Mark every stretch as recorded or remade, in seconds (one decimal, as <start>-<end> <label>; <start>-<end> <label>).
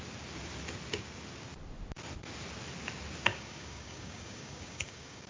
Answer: 0.0-3.3 recorded; 3.3-5.3 remade